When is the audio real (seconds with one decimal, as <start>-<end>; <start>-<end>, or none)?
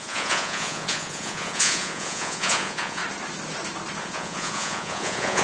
3.0-4.0